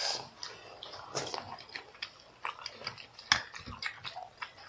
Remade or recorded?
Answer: recorded